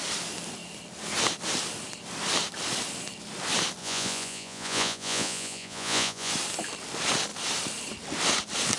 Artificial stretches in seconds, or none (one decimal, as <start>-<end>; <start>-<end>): 3.8-6.3